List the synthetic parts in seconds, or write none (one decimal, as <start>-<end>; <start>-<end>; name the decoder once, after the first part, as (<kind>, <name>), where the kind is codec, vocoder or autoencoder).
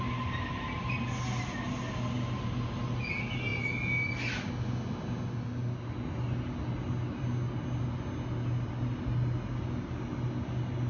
none